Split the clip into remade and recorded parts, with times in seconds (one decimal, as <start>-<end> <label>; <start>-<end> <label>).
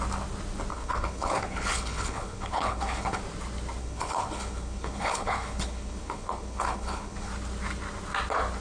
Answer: 0.0-0.7 recorded; 0.7-3.2 remade; 3.2-3.8 recorded; 3.8-7.3 remade; 7.3-8.6 recorded